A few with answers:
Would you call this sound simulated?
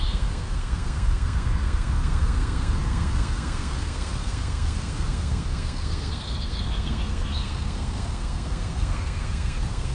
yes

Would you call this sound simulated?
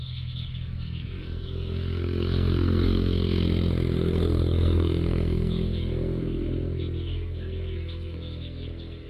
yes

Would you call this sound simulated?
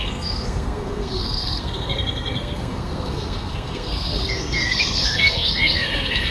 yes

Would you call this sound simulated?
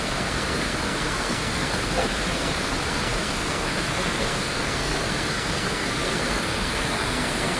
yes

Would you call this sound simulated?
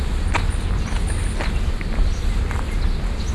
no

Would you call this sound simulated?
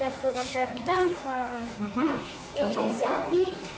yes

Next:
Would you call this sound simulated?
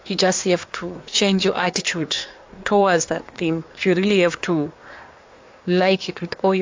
yes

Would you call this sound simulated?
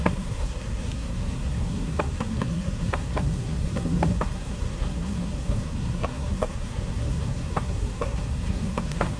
yes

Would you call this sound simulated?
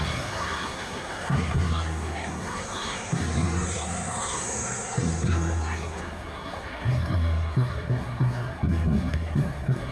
yes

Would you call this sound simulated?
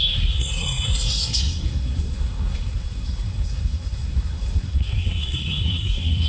yes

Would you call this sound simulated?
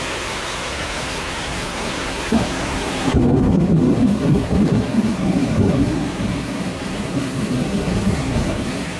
yes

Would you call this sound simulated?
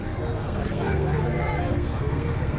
yes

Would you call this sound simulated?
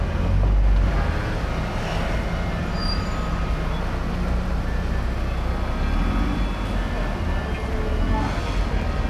no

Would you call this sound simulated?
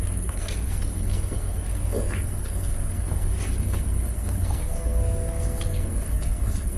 yes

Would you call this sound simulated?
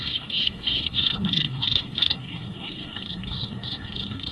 yes